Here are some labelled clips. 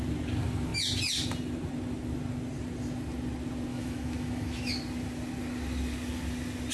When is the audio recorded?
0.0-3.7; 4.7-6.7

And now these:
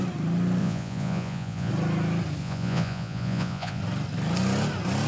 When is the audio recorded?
0.0-0.6; 1.7-2.4; 3.8-5.1

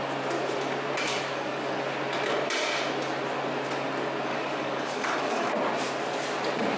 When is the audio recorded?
0.0-1.1; 1.8-4.3; 5.5-6.8

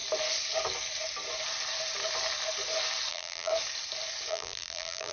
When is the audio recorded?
0.0-3.1; 3.5-4.3

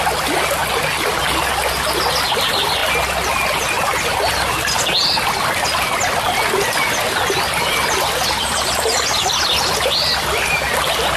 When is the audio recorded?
0.0-11.2